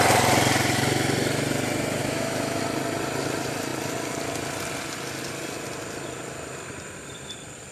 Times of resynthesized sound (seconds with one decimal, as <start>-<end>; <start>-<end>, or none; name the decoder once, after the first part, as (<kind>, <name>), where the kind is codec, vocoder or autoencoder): 2.0-2.6 (autoencoder, DAC-VAE)